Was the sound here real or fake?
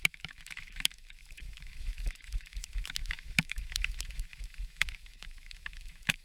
fake